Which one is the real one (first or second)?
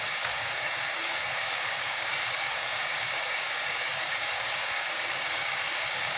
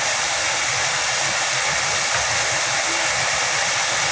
second